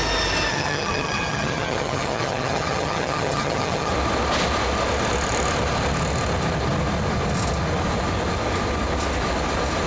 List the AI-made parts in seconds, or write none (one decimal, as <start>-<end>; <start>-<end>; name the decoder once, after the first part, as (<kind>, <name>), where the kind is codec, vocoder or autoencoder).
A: 0.5-3.9 (vocoder, HiFi-GAN)